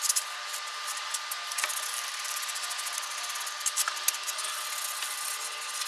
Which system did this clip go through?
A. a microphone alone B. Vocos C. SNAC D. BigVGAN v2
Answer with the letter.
A